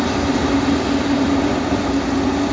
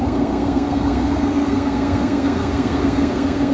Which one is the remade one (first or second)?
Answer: second